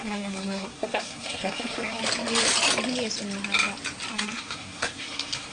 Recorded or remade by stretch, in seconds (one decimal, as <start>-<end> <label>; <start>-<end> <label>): 0.0-2.0 remade; 2.0-4.1 recorded; 4.1-5.5 remade